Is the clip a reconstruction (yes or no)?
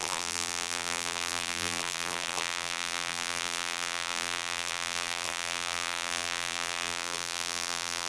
yes